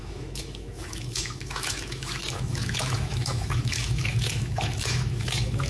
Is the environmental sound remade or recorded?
remade